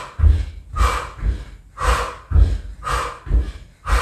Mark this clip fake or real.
real